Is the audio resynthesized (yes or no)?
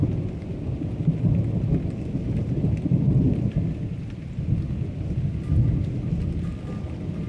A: no